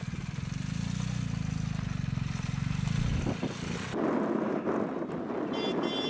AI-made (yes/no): no